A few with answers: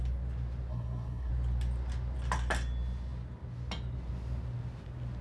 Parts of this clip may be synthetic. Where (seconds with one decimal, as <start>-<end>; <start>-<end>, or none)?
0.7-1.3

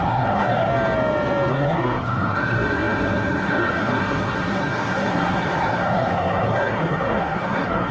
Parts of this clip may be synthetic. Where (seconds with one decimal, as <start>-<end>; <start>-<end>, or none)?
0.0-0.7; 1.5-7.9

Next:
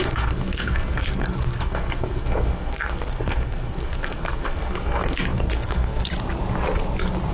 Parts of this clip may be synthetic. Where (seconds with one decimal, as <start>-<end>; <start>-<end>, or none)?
0.0-6.1